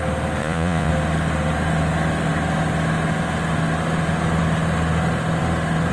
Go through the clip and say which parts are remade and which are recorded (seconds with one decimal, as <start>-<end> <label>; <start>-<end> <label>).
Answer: 0.0-0.4 recorded; 0.4-0.9 remade; 0.9-5.9 recorded